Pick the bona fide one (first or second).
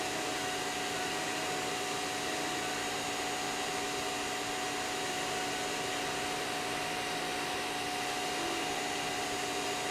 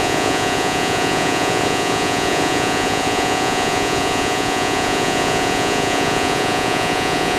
first